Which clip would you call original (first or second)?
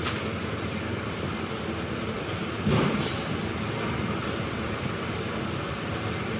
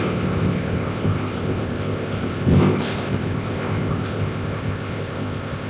first